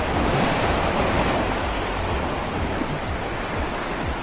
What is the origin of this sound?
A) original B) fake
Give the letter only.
A